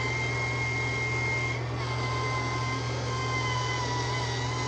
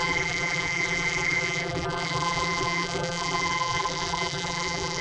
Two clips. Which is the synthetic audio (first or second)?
second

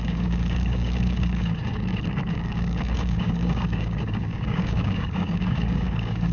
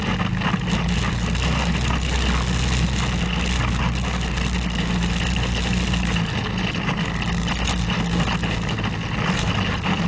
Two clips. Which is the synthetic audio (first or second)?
first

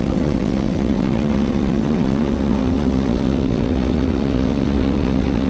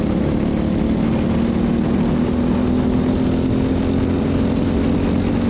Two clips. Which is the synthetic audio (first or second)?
first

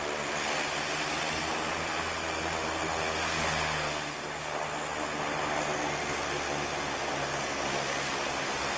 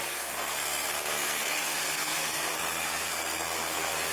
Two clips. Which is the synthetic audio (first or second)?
second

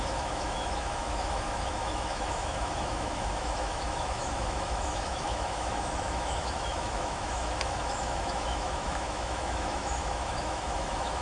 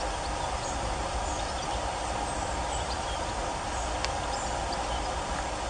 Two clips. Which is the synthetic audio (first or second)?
first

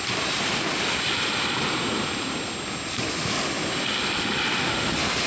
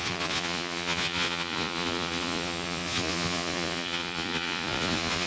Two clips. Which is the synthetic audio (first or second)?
second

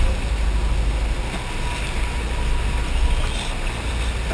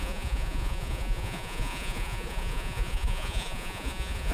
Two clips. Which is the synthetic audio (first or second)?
second